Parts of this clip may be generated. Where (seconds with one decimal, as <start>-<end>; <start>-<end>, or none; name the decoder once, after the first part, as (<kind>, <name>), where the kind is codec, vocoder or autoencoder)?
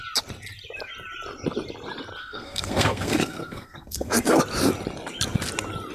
2.2-4.4 (codec, SNAC)